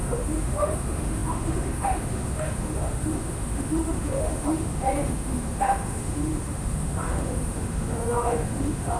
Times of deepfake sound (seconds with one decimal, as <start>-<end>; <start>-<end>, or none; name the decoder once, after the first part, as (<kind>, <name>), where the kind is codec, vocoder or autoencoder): 0.0-9.0 (autoencoder, DAC-VAE)